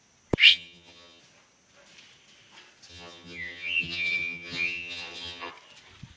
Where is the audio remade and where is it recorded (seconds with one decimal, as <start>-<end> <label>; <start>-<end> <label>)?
0.0-0.5 recorded; 0.5-1.2 remade; 1.2-2.9 recorded; 2.9-5.5 remade; 5.5-6.2 recorded